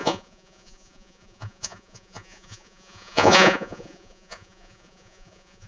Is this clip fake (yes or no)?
yes